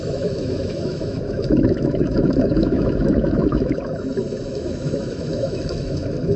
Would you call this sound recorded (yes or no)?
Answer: no